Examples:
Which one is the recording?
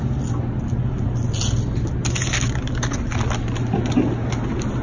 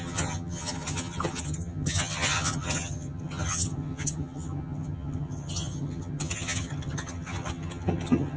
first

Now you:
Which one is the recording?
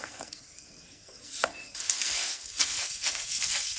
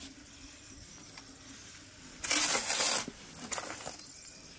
second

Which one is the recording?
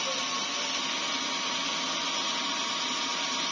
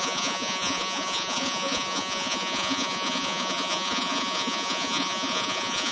first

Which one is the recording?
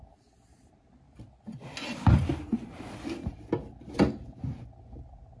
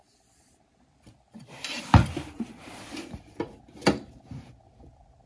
first